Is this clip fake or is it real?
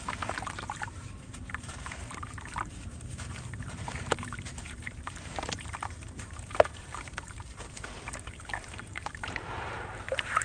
fake